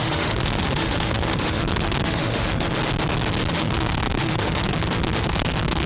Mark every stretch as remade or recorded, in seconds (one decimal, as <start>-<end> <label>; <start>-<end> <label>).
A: 0.0-2.7 remade; 2.7-3.5 recorded; 3.5-5.9 remade